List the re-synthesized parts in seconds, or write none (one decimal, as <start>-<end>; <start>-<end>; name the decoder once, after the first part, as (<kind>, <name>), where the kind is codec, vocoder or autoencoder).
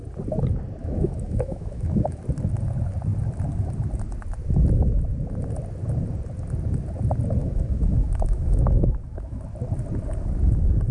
0.8-2.2 (autoencoder, DAC-VAE); 7.4-9.4